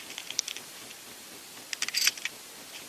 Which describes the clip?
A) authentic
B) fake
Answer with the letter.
A